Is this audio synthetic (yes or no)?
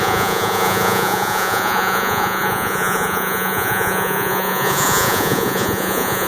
yes